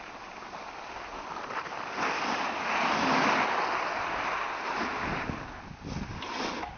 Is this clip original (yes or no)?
yes